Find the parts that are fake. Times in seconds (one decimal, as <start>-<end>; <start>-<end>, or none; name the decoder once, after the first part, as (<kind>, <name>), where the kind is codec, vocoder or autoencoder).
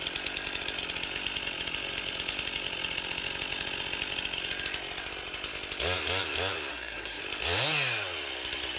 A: 6.7-7.2 (codec, SNAC)